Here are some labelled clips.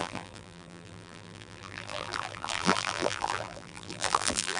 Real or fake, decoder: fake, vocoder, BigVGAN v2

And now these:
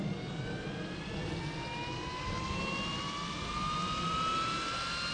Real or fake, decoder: real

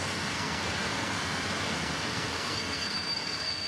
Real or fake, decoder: fake, codec, SNAC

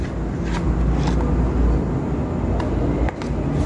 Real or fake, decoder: real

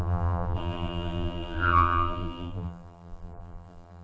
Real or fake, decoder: fake, vocoder, BigVGAN v2